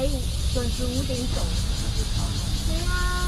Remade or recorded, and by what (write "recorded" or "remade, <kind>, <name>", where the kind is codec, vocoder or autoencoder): recorded